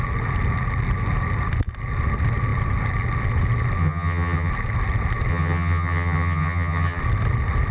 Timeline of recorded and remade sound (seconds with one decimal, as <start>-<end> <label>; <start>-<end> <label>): 0.0-3.8 recorded; 3.8-4.5 remade; 4.5-5.3 recorded; 5.3-7.0 remade; 7.0-7.7 recorded